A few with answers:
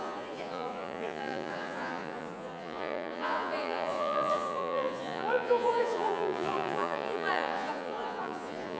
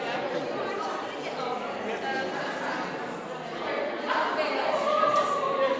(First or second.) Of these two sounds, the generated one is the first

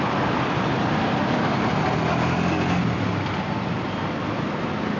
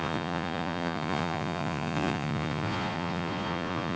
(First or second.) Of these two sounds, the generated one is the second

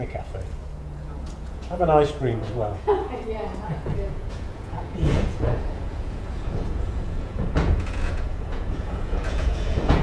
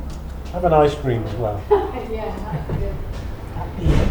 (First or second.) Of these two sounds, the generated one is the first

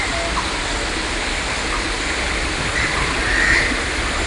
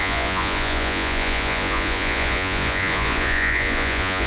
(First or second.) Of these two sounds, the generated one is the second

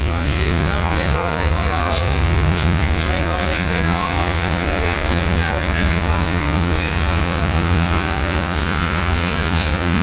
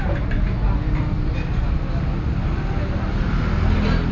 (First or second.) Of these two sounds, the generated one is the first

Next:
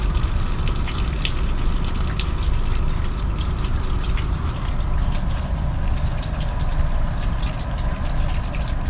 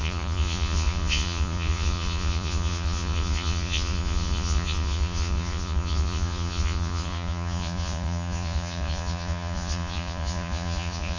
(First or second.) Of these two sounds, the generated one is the second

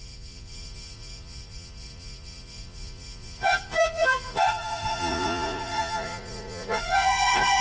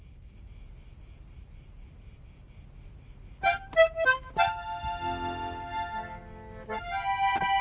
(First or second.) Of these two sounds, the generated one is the first